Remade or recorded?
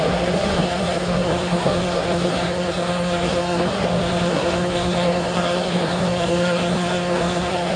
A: remade